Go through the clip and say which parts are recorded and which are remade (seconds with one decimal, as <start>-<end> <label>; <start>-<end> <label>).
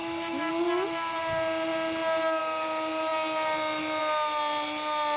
0.0-0.5 remade; 0.5-5.2 recorded